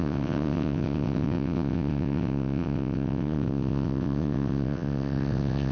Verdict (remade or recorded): remade